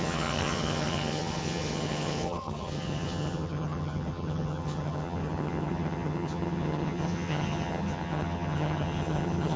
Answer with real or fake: fake